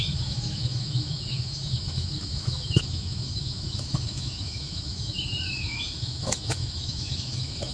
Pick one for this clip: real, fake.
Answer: fake